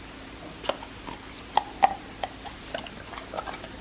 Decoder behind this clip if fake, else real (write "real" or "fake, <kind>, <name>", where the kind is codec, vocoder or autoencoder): fake, vocoder, BigVGAN v2